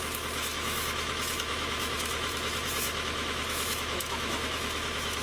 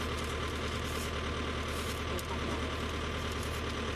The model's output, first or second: first